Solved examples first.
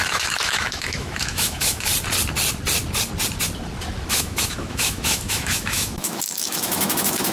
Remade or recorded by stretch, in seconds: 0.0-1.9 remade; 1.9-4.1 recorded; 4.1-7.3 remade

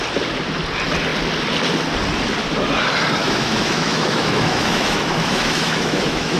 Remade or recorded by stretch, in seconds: 0.0-3.2 recorded; 3.2-6.4 remade